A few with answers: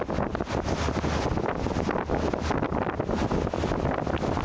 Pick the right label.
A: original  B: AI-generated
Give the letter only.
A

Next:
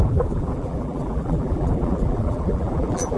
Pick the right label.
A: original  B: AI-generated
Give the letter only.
B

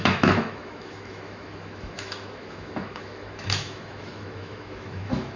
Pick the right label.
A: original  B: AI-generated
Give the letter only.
B